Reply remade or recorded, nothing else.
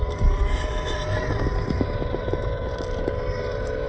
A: remade